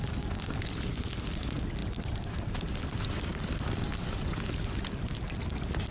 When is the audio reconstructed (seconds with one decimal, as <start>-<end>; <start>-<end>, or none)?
none